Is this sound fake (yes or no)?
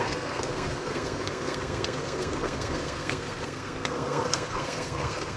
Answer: yes